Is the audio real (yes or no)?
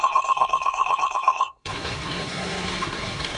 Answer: no